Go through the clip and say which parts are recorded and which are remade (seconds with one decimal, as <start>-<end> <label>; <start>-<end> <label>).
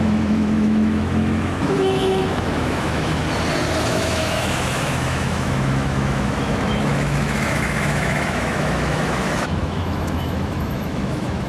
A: 0.0-3.2 remade; 3.2-3.9 recorded; 3.9-11.5 remade